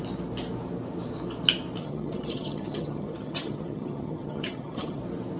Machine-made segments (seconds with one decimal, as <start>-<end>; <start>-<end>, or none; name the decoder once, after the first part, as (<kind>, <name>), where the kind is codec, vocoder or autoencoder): 1.8-5.0 (vocoder, HiFi-GAN)